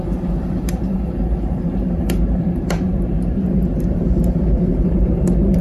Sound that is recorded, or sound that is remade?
remade